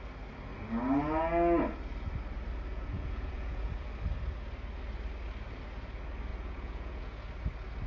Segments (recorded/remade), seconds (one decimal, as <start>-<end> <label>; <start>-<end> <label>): 0.0-2.7 recorded; 2.7-3.7 remade; 3.7-6.3 recorded; 6.3-7.0 remade; 7.0-7.9 recorded

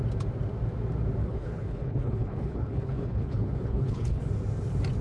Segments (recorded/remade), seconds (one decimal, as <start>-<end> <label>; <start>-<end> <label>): 0.0-1.2 recorded; 1.2-4.2 remade; 4.2-5.0 recorded

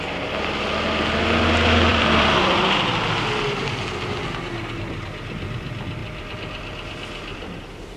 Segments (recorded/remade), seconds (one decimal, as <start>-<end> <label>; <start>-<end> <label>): 0.0-1.9 recorded; 1.9-2.9 remade; 2.9-6.0 recorded; 6.0-7.6 remade; 7.6-8.0 recorded

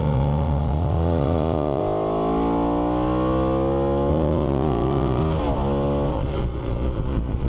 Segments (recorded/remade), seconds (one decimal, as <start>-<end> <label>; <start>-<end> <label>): 0.0-1.8 remade; 1.8-4.1 recorded; 4.1-5.2 remade; 5.2-6.1 recorded; 6.1-7.5 remade

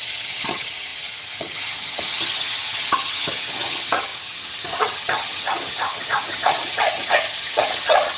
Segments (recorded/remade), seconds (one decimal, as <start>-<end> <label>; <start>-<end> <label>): 0.0-8.2 remade

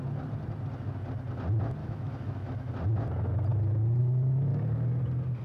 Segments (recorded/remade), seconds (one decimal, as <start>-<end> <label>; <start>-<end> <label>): 0.0-1.8 recorded; 1.8-2.7 remade; 2.7-5.4 recorded

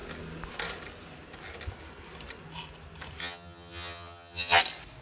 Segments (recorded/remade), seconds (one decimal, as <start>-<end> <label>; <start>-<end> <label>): 0.0-3.2 recorded; 3.2-4.6 remade; 4.6-5.0 recorded

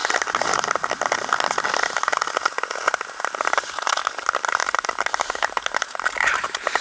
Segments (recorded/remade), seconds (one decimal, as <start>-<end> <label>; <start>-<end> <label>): 0.0-4.0 recorded; 4.0-6.8 remade